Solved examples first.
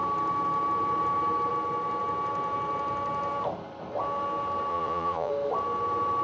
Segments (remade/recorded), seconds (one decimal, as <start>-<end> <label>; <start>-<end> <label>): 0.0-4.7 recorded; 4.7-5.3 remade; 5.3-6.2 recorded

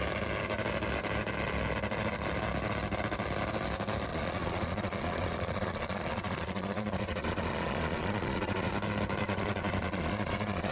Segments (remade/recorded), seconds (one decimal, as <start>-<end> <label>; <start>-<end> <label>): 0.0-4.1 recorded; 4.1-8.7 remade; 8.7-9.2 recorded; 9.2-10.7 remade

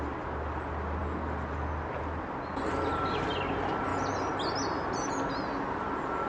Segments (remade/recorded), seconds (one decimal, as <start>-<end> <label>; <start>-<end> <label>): 0.0-6.3 recorded